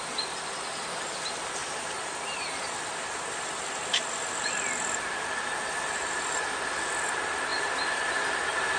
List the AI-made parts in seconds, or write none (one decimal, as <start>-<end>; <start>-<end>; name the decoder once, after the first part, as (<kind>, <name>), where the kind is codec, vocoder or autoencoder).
none